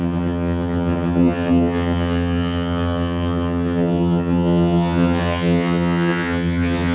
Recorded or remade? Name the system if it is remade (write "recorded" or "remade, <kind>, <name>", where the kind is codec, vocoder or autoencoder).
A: remade, vocoder, HiFi-GAN